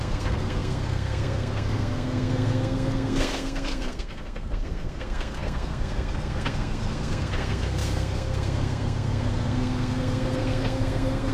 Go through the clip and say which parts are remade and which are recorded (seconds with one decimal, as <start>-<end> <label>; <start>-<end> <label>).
0.0-11.3 remade